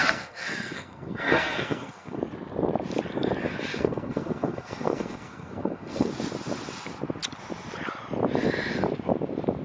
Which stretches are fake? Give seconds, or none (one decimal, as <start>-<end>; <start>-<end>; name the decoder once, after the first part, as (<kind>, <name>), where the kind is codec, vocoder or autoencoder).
0.0-2.2 (codec, SNAC); 3.7-6.1